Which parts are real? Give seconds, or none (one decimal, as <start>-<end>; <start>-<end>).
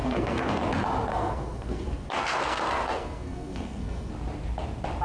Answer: 0.6-1.1; 4.1-5.0